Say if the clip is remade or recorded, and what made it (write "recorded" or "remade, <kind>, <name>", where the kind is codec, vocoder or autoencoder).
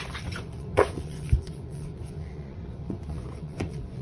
remade, vocoder, Vocos